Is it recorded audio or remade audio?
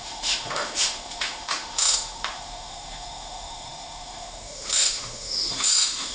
remade